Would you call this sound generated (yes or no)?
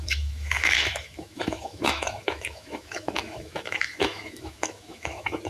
yes